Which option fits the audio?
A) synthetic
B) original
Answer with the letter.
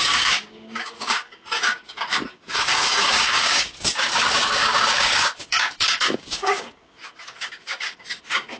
A